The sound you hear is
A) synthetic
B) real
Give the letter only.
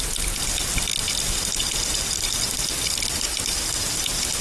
B